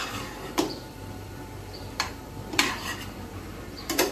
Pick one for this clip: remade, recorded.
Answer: remade